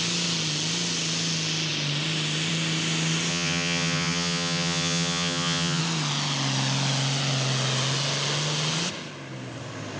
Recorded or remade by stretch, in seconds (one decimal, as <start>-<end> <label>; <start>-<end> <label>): 0.0-3.3 recorded; 3.3-5.8 remade; 5.8-10.0 recorded